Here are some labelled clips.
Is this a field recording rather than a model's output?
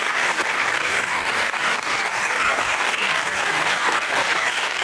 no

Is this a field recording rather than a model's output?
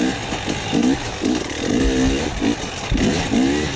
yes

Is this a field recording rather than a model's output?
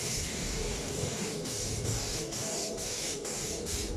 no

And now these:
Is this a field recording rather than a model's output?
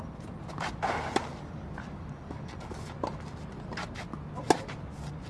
yes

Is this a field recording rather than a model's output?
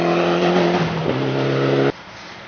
yes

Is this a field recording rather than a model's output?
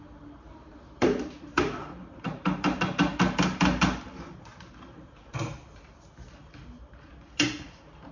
yes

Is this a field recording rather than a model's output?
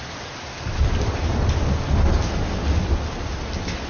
yes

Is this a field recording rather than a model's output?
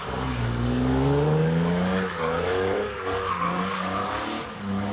no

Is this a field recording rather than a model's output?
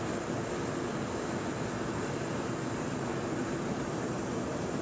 yes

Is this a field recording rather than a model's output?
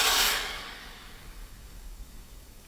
no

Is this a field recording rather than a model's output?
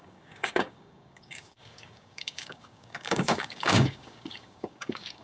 no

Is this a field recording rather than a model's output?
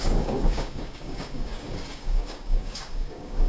no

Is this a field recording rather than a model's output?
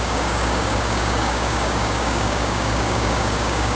no